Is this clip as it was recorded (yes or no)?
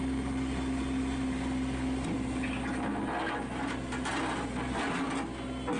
yes